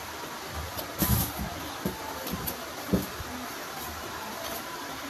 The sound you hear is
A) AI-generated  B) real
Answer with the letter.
A